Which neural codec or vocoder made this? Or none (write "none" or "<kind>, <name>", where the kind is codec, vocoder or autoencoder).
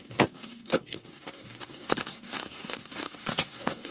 codec, SNAC